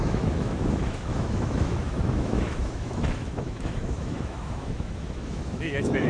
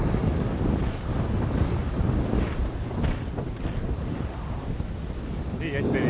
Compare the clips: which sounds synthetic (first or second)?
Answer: first